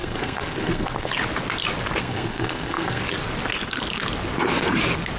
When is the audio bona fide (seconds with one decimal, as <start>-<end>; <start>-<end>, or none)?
1.1-2.0; 3.0-5.2